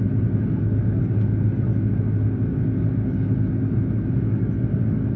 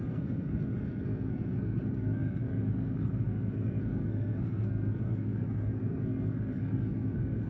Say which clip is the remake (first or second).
second